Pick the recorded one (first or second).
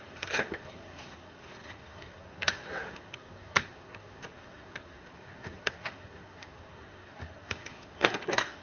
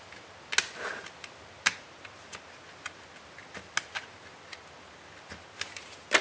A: second